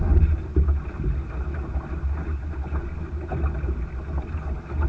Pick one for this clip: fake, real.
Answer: real